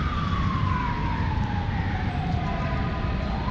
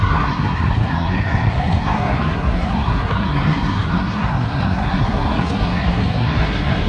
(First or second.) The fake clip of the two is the second